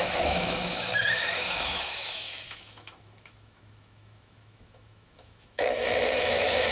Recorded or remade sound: remade